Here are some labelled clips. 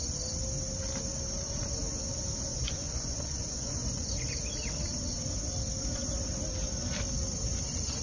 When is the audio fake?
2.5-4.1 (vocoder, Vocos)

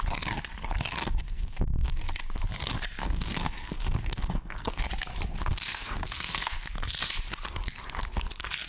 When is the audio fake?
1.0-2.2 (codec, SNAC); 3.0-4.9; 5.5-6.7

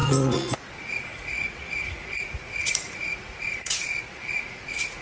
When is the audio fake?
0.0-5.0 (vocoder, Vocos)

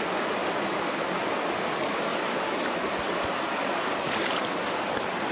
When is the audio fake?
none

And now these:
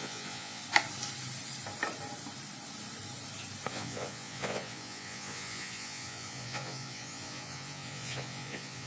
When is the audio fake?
0.0-0.6 (vocoder, Vocos); 3.7-8.9

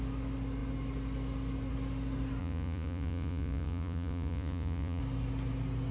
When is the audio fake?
2.4-5.0 (vocoder, Vocos)

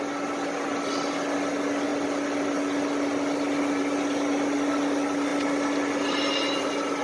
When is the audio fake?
none

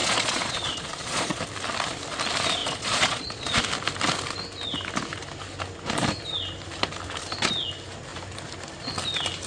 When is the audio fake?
0.0-1.4 (vocoder, Vocos); 2.6-3.6